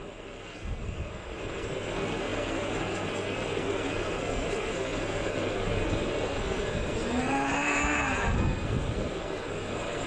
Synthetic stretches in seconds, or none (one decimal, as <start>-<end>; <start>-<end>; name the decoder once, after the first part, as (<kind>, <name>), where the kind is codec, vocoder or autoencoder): 0.0-10.1 (codec, SNAC)